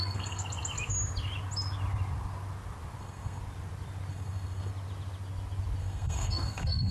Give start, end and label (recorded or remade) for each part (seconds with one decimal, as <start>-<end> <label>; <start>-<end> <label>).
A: 0.0-0.4 remade; 0.4-3.0 recorded; 3.0-3.4 remade; 3.4-4.1 recorded; 4.1-4.7 remade; 4.7-5.8 recorded; 5.8-6.9 remade